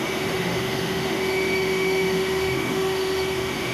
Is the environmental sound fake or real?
fake